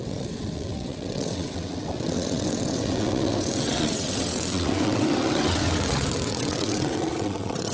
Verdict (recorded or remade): remade